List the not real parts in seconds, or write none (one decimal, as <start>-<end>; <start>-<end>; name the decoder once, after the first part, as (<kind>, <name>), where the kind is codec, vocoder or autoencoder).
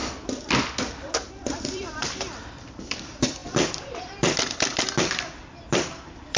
1.3-6.4 (vocoder, BigVGAN v2)